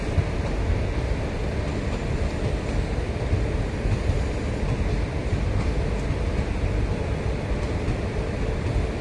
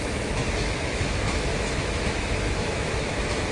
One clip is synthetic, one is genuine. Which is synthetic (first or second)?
second